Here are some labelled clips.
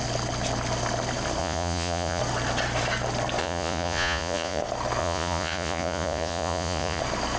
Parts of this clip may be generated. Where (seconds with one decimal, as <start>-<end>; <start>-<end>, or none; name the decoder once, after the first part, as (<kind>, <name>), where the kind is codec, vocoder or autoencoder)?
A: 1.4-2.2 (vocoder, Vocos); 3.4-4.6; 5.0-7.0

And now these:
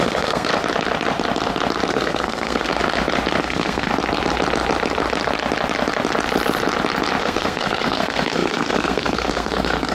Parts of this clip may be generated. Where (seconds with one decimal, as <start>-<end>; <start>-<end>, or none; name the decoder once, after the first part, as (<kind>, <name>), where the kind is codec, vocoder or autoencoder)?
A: 0.0-0.5 (codec, SNAC); 1.9-2.7; 3.4-3.9; 7.2-9.9

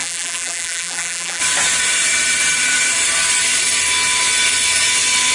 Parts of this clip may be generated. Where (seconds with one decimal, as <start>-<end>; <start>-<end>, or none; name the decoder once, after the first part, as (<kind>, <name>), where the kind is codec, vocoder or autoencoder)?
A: 0.0-1.4 (vocoder, BigVGAN v2)